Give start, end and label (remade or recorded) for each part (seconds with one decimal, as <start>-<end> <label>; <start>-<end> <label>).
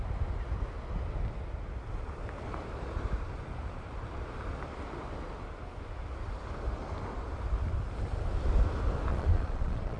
0.0-9.1 recorded; 9.1-10.0 remade